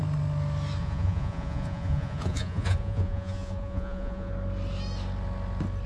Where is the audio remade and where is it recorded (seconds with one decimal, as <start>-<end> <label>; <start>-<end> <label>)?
0.0-0.8 recorded; 0.8-4.3 remade; 4.3-5.9 recorded

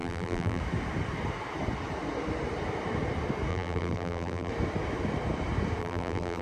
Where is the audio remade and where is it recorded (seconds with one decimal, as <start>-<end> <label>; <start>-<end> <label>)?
0.0-0.6 remade; 0.6-3.5 recorded; 3.5-4.5 remade; 4.5-5.8 recorded; 5.8-6.4 remade

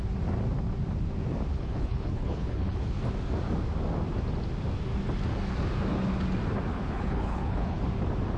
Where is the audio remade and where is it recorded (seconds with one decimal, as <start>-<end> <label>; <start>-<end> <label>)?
0.0-1.5 recorded; 1.5-3.0 remade; 3.0-6.7 recorded; 6.7-7.8 remade; 7.8-8.4 recorded